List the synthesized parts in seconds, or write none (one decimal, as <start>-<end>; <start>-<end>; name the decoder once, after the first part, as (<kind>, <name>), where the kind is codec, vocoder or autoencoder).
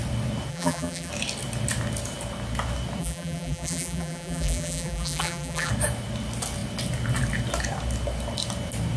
0.5-1.1 (vocoder, BigVGAN v2); 3.0-5.7